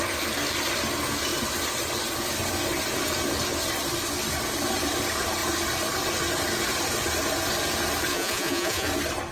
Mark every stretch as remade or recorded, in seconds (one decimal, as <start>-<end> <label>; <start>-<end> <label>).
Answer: 0.0-8.1 recorded; 8.1-8.9 remade; 8.9-9.3 recorded